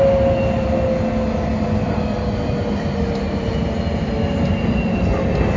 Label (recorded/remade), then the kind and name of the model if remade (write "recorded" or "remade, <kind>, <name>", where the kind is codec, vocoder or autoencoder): recorded